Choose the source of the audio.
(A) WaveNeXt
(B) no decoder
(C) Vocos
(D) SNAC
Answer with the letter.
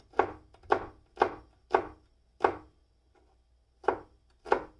B